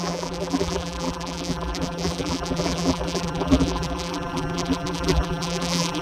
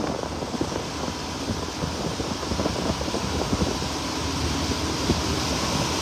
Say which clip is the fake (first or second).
first